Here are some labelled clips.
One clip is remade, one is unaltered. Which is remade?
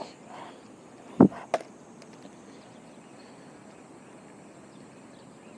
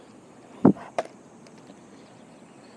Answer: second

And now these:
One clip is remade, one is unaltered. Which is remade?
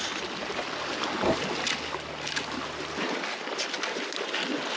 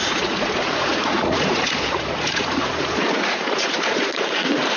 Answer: second